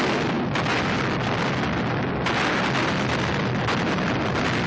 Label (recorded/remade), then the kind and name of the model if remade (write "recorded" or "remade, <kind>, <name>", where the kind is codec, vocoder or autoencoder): recorded